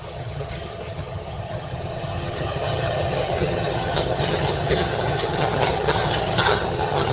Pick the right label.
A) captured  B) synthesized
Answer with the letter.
B